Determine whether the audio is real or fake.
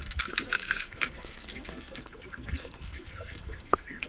fake